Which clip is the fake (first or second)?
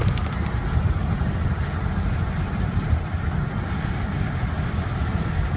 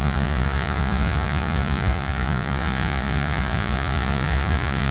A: second